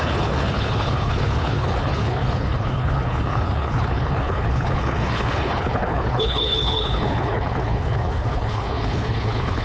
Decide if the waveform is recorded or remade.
remade